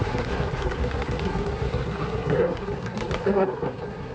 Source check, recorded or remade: remade